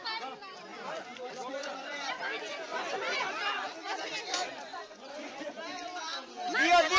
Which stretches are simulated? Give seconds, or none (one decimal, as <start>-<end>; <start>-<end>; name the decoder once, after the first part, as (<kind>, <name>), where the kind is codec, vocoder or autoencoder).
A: 1.6-2.2 (vocoder, Vocos); 2.7-3.3; 4.7-5.4